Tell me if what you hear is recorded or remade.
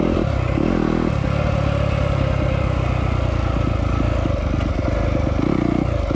recorded